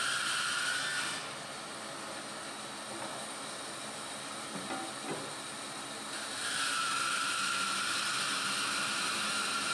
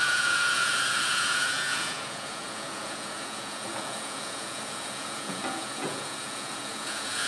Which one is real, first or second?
first